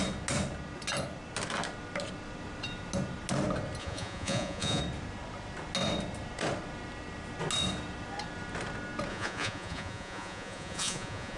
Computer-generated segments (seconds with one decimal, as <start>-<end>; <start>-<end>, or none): 3.8-4.8; 9.1-11.4